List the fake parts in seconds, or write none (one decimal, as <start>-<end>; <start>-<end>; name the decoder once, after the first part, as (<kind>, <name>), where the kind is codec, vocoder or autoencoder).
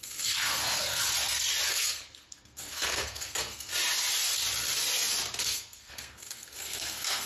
0.0-1.0 (codec, SNAC); 1.7-3.7; 5.4-7.3